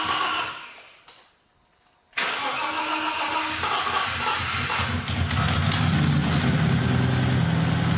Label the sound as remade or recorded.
recorded